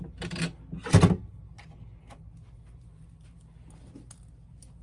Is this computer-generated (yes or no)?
no